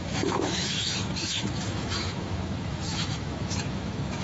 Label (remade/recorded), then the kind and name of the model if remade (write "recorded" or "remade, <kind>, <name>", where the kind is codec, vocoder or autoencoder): remade, autoencoder, DAC-VAE